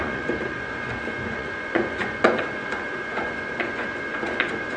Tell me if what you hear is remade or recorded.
remade